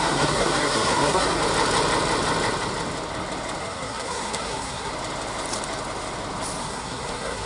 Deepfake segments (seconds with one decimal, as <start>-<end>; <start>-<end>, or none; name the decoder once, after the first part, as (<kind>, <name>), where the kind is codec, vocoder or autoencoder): 0.0-1.4 (codec, SNAC); 3.6-4.9; 6.6-7.5